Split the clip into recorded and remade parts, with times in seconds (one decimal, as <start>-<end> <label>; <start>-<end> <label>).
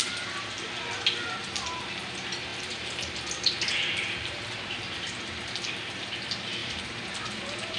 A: 0.0-7.8 remade